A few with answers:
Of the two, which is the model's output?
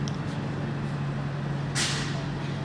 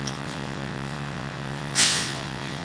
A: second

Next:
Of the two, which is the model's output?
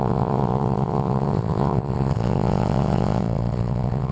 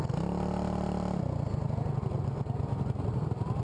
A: first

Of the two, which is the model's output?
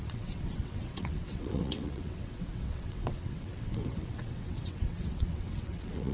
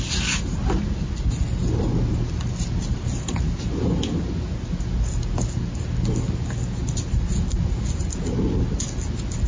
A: first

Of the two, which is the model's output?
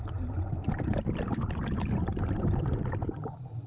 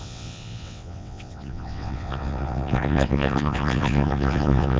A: second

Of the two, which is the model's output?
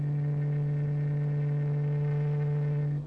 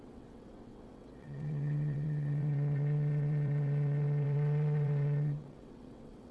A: second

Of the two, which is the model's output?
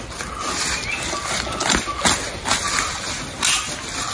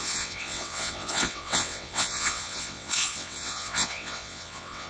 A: second